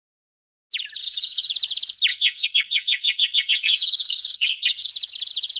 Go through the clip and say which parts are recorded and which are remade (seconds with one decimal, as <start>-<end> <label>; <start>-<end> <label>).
0.0-1.0 recorded; 1.0-1.5 remade; 1.5-2.1 recorded; 2.1-4.9 remade; 4.9-5.6 recorded